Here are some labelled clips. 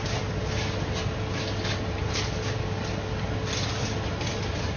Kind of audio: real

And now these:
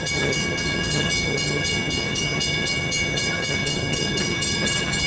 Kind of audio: fake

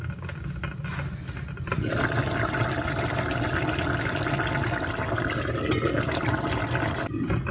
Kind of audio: real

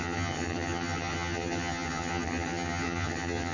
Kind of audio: fake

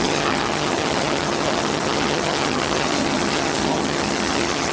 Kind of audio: fake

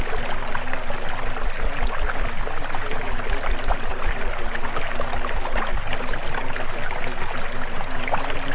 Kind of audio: real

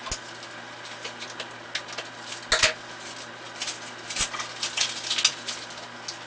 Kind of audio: real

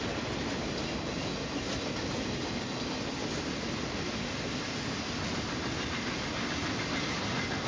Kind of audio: real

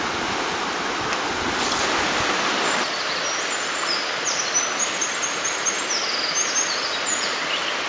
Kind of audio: real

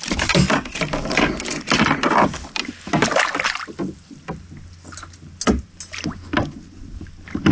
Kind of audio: real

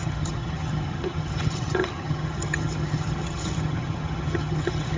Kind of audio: fake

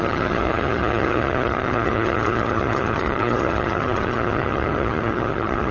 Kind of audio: fake